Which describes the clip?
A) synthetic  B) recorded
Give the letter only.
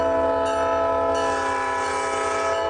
B